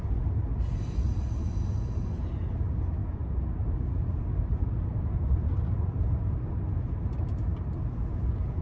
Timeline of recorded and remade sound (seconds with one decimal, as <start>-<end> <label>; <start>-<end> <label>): 0.0-3.0 recorded; 3.0-6.6 remade; 6.6-8.6 recorded